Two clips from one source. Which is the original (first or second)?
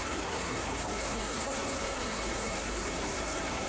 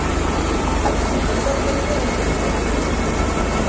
second